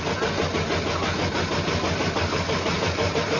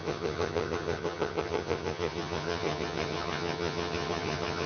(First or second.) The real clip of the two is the first